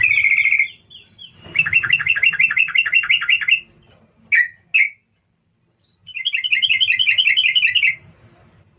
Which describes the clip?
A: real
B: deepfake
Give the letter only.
A